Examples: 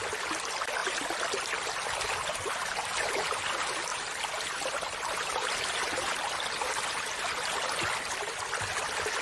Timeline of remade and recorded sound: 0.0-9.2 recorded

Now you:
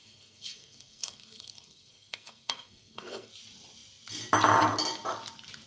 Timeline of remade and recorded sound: 0.0-3.3 remade; 3.3-5.7 recorded